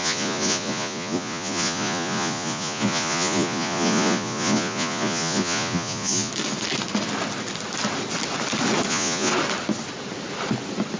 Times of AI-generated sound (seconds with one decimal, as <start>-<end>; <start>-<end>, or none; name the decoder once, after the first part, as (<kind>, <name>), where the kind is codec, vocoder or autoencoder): 0.0-6.3 (vocoder, Vocos); 8.9-9.3